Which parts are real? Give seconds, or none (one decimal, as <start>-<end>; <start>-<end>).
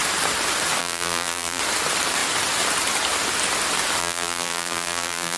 0.0-0.8; 1.6-4.0